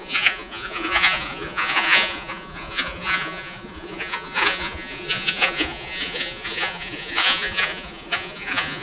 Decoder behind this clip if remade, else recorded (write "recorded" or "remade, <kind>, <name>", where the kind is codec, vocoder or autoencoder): remade, vocoder, Vocos